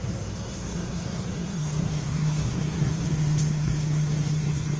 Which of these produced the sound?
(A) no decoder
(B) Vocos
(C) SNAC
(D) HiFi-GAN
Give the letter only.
C